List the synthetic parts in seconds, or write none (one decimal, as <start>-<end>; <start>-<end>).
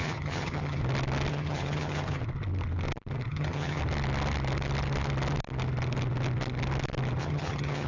0.0-0.8; 1.3-2.2; 3.3-3.8; 7.2-7.9